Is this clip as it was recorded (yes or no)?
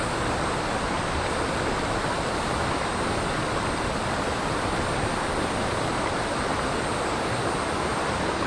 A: yes